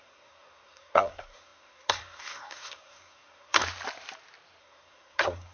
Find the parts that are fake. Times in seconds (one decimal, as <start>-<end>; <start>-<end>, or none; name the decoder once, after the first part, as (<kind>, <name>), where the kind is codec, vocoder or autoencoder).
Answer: 0.0-3.6 (codec, SNAC); 4.6-5.5